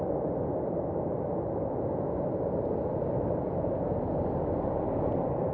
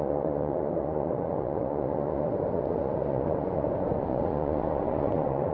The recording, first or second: first